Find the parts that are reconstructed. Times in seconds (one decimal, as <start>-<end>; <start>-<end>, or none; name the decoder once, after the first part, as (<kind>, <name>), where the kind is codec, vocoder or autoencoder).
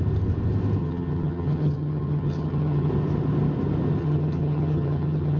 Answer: 0.8-2.9 (vocoder, HiFi-GAN); 4.0-5.4